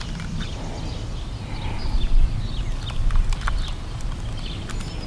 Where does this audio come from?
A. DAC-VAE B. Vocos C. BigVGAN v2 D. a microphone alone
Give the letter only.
D